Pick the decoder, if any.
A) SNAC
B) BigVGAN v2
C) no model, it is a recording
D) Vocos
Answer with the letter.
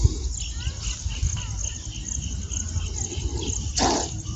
C